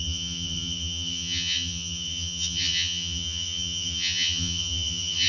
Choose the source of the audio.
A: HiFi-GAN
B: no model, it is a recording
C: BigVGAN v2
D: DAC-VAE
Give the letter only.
A